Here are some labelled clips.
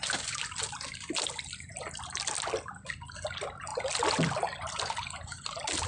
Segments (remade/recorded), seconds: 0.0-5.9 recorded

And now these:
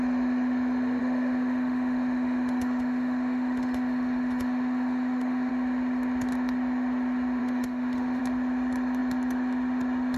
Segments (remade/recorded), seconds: 0.0-1.0 recorded; 1.0-5.5 remade; 5.5-7.4 recorded; 7.4-8.2 remade; 8.2-10.2 recorded

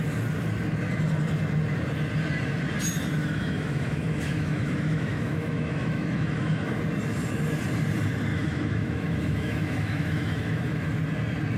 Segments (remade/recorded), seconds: 0.0-3.2 recorded; 3.2-6.8 remade; 6.8-8.3 recorded; 8.3-10.9 remade; 10.9-11.6 recorded

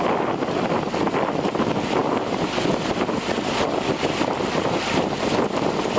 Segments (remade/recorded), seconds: 0.0-6.0 recorded

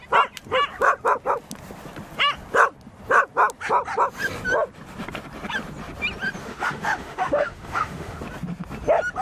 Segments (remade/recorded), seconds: 0.0-6.4 recorded; 6.4-8.2 remade; 8.2-9.2 recorded

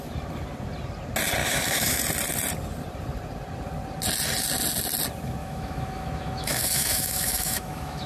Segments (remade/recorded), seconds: 0.0-1.4 recorded; 1.4-2.0 remade; 2.0-5.4 recorded; 5.4-8.1 remade

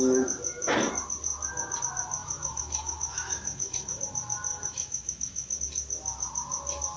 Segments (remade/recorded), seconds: 0.0-2.2 recorded; 2.2-4.0 remade; 4.0-4.5 recorded; 4.5-5.6 remade; 5.6-7.0 recorded